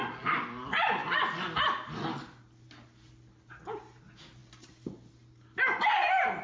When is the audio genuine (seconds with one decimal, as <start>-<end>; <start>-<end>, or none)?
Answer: 0.0-6.4